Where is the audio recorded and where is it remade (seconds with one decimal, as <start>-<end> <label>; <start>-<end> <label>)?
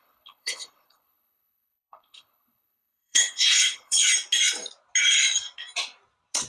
0.0-4.1 remade; 4.1-6.5 recorded